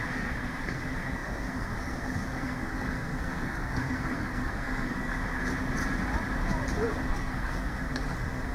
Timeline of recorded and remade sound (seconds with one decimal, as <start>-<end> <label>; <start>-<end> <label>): 0.0-5.5 remade; 5.5-7.1 recorded; 7.1-8.5 remade